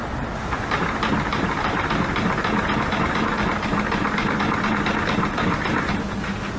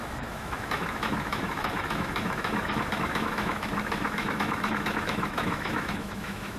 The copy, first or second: second